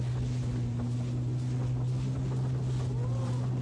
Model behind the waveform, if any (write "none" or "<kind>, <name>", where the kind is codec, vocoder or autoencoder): none